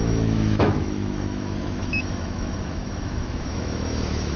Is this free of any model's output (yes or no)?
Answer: no